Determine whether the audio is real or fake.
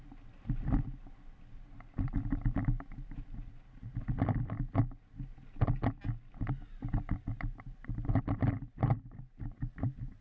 real